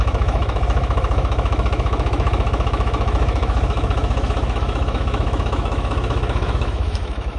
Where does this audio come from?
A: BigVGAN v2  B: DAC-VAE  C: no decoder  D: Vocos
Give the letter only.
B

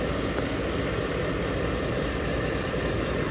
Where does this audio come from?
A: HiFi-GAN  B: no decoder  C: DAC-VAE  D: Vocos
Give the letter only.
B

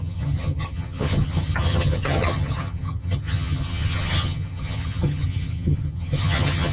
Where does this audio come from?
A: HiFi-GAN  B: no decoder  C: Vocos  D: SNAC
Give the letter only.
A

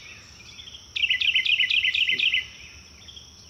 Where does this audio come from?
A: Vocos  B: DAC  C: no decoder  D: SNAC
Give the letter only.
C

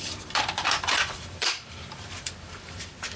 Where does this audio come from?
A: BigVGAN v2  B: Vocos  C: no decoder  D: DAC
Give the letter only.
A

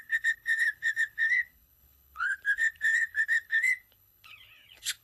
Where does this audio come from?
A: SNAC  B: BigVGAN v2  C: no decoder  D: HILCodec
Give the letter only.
D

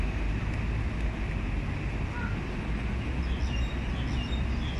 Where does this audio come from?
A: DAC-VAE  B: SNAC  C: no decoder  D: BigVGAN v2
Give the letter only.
C